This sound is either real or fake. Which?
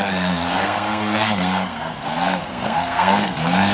fake